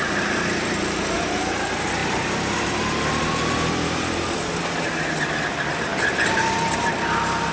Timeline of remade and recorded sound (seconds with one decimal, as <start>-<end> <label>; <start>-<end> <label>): 0.0-7.5 recorded